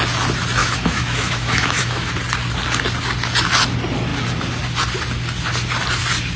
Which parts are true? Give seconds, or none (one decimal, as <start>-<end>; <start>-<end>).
0.0-0.6; 2.1-6.4